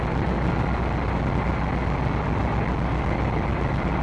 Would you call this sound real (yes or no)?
yes